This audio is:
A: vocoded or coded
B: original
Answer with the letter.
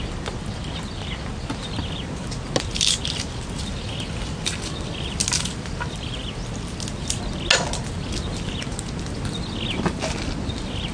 B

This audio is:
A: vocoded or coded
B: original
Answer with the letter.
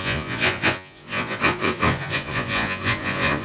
A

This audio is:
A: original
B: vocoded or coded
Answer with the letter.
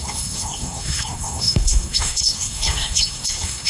B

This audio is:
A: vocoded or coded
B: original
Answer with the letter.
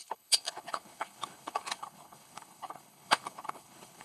A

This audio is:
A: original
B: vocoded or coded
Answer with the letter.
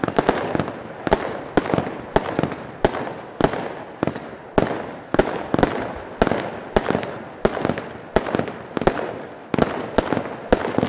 A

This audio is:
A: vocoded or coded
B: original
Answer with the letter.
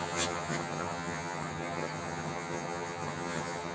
A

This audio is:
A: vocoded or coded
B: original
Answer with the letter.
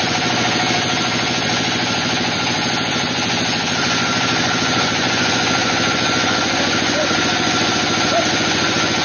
A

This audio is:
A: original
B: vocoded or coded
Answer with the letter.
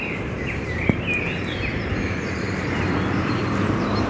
B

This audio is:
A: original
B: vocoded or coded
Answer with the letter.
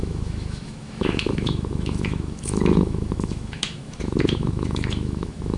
B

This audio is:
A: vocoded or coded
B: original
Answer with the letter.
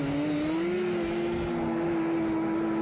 B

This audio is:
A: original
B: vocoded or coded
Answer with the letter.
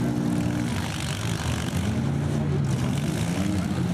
A